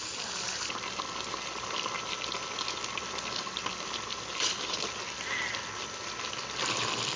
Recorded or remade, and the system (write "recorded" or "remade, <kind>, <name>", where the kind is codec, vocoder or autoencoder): recorded